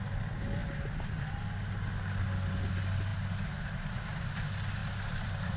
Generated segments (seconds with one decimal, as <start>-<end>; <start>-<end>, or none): 4.8-5.6